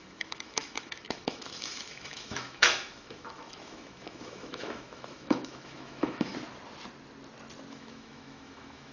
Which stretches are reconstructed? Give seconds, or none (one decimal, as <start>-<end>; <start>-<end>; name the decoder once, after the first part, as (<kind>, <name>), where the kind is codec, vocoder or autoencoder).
0.0-6.3 (autoencoder, DAC-VAE); 7.7-8.9